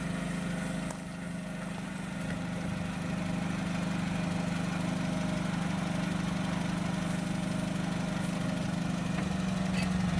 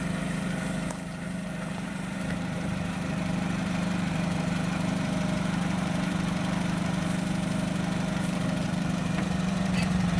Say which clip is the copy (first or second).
second